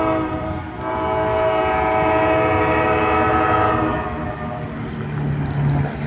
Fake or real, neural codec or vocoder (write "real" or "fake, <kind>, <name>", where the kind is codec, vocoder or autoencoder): real